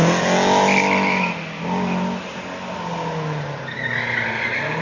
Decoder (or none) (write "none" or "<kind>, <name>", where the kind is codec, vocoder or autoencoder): none